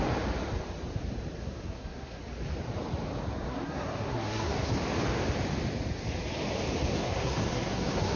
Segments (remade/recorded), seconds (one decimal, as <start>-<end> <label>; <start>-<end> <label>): 0.0-1.4 recorded; 1.4-2.2 remade; 2.2-3.5 recorded; 3.5-4.7 remade; 4.7-6.9 recorded; 6.9-8.2 remade